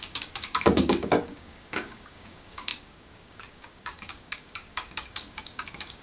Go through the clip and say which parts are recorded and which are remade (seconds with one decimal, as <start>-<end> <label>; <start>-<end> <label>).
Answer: 0.0-6.0 remade